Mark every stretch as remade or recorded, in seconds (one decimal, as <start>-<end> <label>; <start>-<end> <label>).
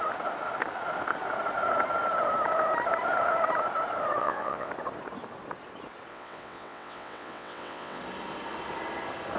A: 0.0-4.2 recorded; 4.2-4.7 remade; 4.7-6.1 recorded; 6.1-8.0 remade; 8.0-9.4 recorded